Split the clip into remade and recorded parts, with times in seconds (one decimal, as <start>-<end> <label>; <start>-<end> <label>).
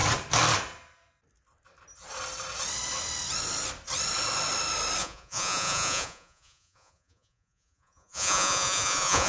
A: 0.0-5.0 recorded; 5.0-9.3 remade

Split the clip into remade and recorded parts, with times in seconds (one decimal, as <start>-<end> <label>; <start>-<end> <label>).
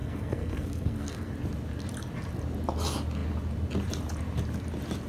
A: 0.0-1.3 remade; 1.3-5.1 recorded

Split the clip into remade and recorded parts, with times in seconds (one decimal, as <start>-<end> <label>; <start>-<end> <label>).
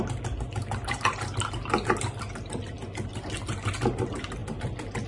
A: 0.0-5.1 recorded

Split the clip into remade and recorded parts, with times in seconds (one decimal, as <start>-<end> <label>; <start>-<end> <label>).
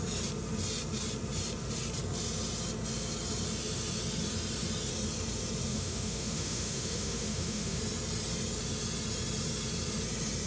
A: 0.0-5.7 recorded; 5.7-7.8 remade; 7.8-10.5 recorded